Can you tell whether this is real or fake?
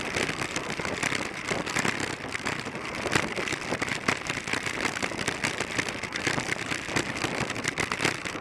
fake